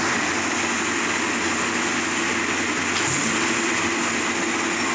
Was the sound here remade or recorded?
recorded